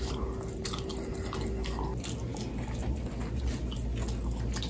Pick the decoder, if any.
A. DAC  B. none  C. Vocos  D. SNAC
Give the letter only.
B